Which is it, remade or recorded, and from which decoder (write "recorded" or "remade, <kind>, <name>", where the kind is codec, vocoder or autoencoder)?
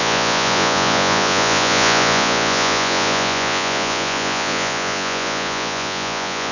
remade, vocoder, Vocos